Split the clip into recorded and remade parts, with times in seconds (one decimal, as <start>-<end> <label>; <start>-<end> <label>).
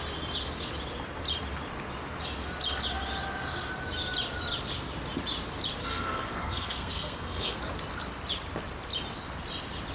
0.0-5.9 recorded; 5.9-7.6 remade; 7.6-9.9 recorded